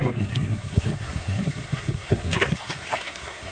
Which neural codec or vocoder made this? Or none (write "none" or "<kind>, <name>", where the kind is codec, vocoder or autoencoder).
codec, SNAC